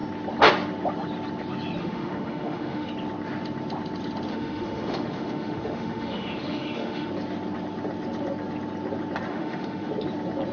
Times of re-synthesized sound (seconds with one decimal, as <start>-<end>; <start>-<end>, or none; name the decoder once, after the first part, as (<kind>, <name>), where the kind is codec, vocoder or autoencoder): 1.8-2.9 (autoencoder, DAC-VAE); 4.3-7.1; 9.3-9.9